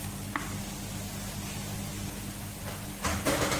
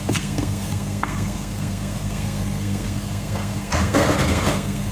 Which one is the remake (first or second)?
second